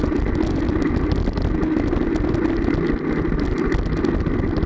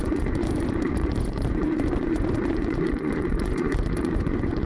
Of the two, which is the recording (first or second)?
first